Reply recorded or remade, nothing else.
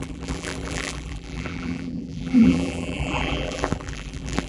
remade